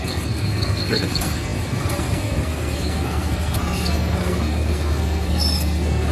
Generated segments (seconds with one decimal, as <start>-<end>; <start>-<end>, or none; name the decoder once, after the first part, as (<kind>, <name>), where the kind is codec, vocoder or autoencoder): 0.0-6.1 (codec, SNAC)